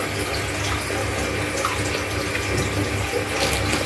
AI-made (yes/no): no